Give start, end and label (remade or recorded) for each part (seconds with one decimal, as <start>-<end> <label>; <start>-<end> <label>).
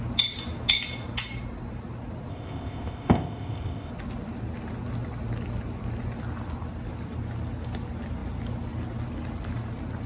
0.0-2.3 recorded; 2.3-3.9 remade; 3.9-10.1 recorded